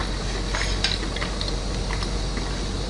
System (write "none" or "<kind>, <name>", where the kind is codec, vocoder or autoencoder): none